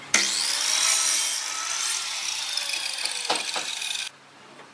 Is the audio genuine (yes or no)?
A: yes